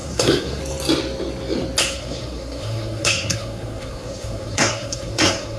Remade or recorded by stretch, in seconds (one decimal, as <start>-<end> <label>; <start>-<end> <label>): 0.0-0.6 remade; 0.6-1.8 recorded; 1.8-5.6 remade